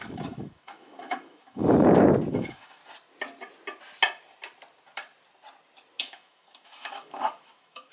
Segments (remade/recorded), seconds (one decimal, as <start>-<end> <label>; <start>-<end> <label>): 0.0-1.6 remade; 1.6-2.3 recorded; 2.3-2.8 remade; 2.8-6.0 recorded; 6.0-7.9 remade